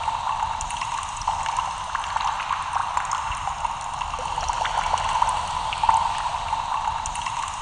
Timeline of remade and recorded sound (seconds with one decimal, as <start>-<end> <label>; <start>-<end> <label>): 0.0-7.6 recorded